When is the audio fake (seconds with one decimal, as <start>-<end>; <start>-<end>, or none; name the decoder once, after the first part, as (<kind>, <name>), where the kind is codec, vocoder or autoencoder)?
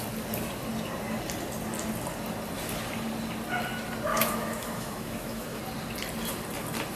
4.1-5.6 (autoencoder, DAC-VAE)